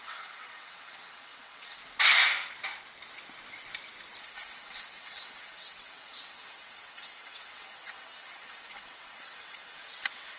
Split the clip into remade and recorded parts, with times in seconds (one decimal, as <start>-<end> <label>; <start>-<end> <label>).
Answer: 0.0-1.8 remade; 1.8-4.2 recorded; 4.2-10.4 remade